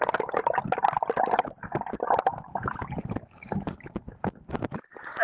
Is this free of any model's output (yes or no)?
yes